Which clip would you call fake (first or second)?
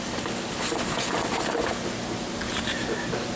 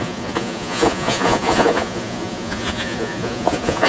second